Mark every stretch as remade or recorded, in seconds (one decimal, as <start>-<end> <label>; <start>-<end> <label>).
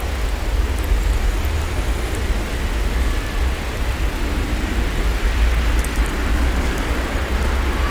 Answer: 0.0-6.3 recorded; 6.3-6.9 remade; 6.9-7.9 recorded